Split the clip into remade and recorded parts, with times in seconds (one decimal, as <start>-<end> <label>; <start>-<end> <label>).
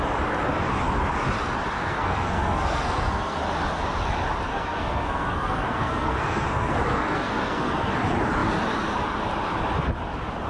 0.0-1.8 recorded; 1.8-3.4 remade; 3.4-4.5 recorded; 4.5-7.9 remade; 7.9-10.5 recorded